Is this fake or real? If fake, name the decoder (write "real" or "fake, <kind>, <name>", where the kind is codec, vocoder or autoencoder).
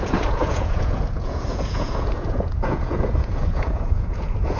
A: fake, vocoder, Vocos